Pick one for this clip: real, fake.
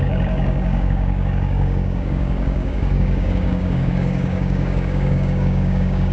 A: fake